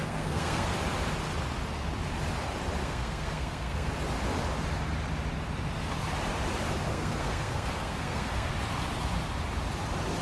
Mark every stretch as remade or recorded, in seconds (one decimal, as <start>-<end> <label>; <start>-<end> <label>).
0.0-0.7 remade; 0.7-2.8 recorded; 2.8-3.9 remade; 3.9-6.9 recorded; 6.9-8.5 remade; 8.5-10.2 recorded